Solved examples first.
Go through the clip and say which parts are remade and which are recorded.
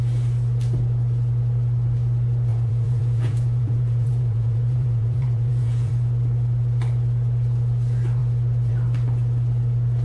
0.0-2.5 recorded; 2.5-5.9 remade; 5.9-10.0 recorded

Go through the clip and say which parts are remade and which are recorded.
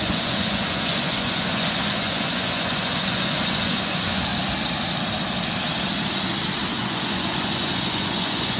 0.0-4.3 remade; 4.3-6.8 recorded; 6.8-8.6 remade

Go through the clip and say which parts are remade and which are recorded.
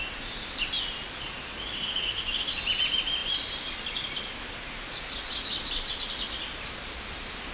0.0-7.5 recorded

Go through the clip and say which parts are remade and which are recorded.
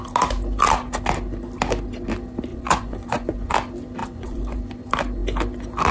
0.0-2.5 recorded; 2.5-3.5 remade; 3.5-4.0 recorded; 4.0-4.6 remade; 4.6-5.9 recorded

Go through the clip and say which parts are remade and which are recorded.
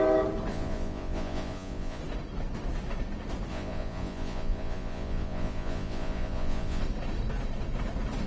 0.0-0.5 recorded; 0.5-2.0 remade; 2.0-3.5 recorded; 3.5-6.8 remade; 6.8-8.3 recorded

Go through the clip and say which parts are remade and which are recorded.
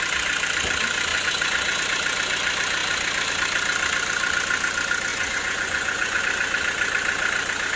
0.0-1.1 recorded; 1.1-1.8 remade; 1.8-5.1 recorded; 5.1-6.2 remade; 6.2-7.8 recorded